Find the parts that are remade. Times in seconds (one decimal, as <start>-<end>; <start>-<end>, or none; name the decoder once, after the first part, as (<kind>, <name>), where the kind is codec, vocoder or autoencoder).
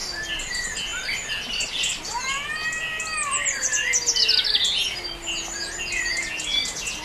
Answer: none